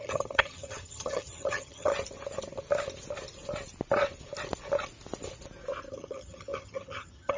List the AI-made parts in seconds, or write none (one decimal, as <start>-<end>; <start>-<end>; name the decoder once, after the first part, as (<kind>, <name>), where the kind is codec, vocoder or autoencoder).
0.0-1.9 (vocoder, HiFi-GAN); 5.9-7.4